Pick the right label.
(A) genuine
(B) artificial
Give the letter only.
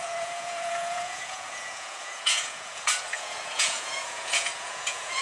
B